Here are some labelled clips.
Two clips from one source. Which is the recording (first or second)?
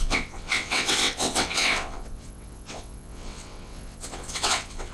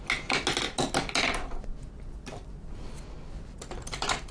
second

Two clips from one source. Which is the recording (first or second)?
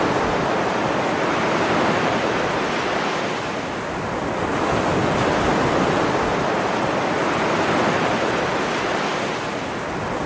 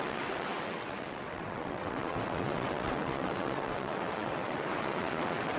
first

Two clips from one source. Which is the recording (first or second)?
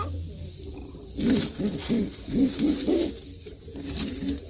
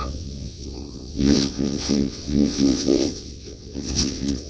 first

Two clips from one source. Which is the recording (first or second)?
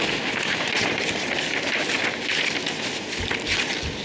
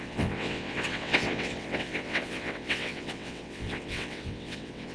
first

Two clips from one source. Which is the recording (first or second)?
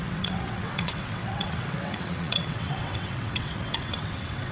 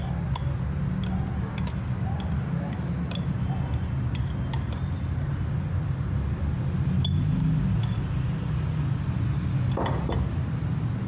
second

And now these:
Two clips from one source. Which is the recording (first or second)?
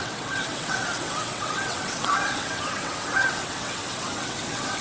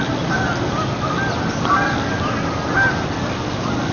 second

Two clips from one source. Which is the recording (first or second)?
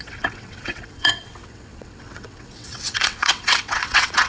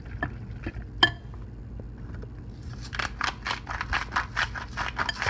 second